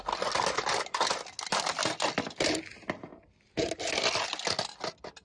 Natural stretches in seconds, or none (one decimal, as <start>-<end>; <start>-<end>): 0.0-5.2